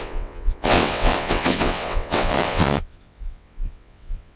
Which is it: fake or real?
fake